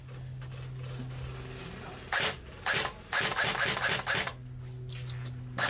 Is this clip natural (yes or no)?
yes